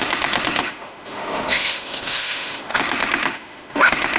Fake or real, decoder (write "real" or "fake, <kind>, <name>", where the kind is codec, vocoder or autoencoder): fake, autoencoder, DAC-VAE